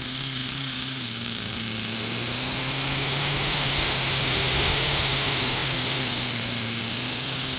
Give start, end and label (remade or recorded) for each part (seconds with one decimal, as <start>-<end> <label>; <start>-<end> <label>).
0.0-7.6 remade